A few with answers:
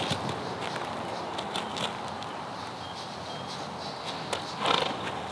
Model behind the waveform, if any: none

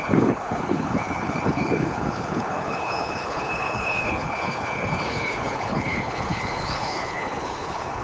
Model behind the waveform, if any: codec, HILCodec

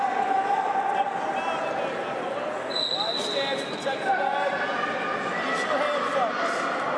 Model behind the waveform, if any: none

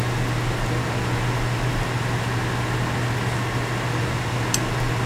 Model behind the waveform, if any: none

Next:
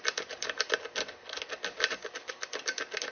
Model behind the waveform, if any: none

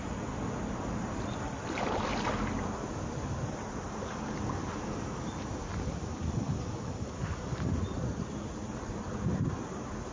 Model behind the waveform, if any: none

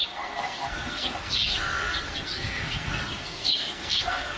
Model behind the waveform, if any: codec, SNAC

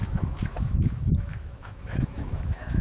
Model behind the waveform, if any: autoencoder, DAC-VAE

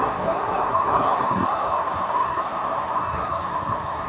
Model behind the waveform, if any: codec, SNAC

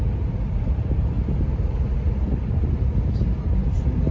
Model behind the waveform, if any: none